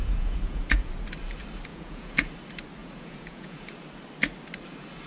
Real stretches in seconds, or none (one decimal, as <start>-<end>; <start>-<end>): 0.9-1.7; 2.3-2.8; 3.6-5.1